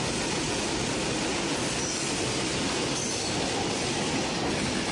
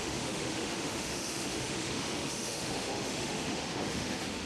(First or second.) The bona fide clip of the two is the first